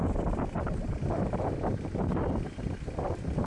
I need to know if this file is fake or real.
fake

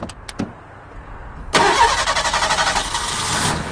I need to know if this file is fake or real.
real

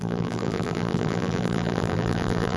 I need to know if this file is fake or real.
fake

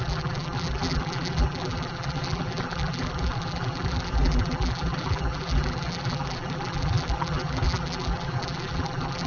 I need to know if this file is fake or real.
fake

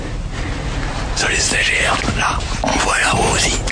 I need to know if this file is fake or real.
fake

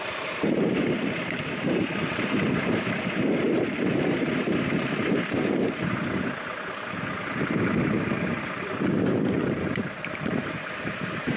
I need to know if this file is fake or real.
fake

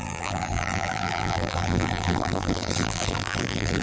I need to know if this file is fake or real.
fake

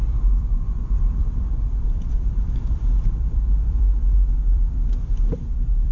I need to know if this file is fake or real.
fake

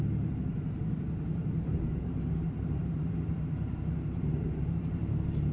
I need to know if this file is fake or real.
fake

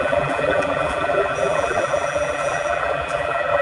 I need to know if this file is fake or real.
fake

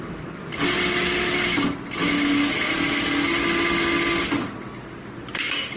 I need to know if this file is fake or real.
real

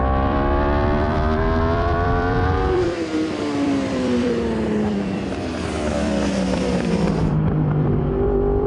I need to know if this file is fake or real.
fake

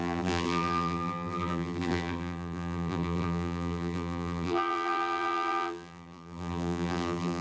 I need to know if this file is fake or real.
fake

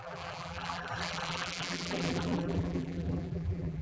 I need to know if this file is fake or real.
fake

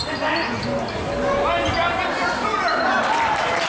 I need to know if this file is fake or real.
real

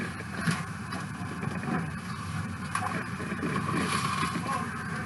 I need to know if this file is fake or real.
fake